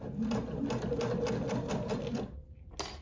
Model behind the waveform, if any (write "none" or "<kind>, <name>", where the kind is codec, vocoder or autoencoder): none